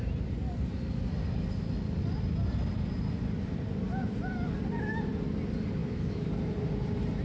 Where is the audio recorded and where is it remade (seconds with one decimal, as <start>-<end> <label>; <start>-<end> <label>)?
0.0-5.8 recorded; 5.8-6.3 remade; 6.3-7.2 recorded